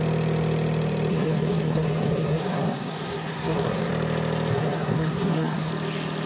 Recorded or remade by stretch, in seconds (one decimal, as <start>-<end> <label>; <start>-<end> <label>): 0.0-1.1 recorded; 1.1-3.9 remade; 3.9-4.5 recorded; 4.5-5.7 remade; 5.7-6.3 recorded